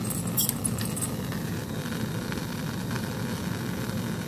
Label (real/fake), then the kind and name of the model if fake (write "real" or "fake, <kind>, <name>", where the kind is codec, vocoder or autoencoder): real